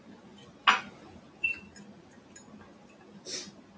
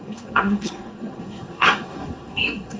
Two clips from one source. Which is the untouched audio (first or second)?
first